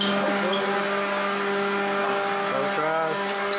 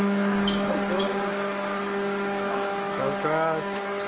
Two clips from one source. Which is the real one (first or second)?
first